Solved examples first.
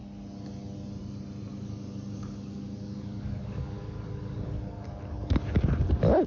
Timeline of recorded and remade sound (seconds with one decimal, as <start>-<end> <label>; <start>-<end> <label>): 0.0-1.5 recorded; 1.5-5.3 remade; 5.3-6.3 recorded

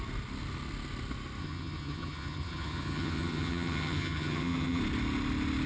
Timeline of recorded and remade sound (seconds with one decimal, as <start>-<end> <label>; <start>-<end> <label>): 0.0-1.4 recorded; 1.4-4.8 remade; 4.8-5.7 recorded

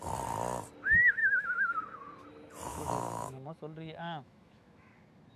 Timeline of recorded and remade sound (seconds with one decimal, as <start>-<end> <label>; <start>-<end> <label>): 0.0-1.2 recorded; 1.2-1.8 remade; 1.8-2.7 recorded; 2.7-4.9 remade; 4.9-5.4 recorded